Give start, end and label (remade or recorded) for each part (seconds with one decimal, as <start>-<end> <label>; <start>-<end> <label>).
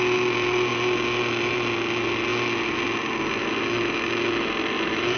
0.0-5.2 recorded